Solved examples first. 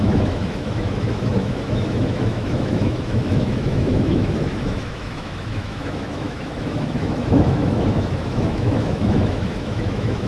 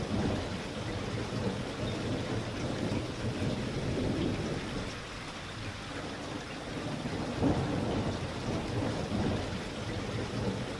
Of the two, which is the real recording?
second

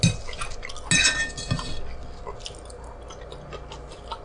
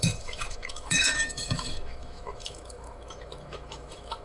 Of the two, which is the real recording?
first